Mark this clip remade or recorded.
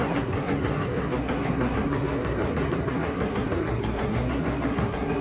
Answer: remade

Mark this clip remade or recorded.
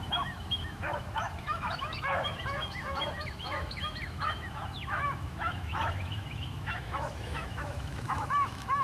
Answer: remade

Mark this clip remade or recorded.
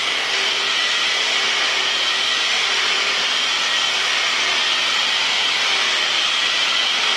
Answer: recorded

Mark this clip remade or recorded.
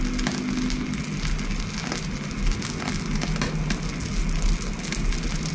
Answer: recorded